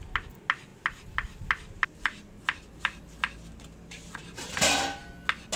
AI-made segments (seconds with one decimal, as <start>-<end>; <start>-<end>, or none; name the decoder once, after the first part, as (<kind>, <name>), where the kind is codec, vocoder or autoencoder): none